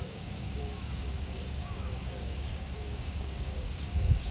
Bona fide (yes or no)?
no